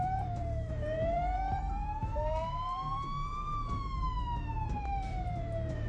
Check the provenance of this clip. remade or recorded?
remade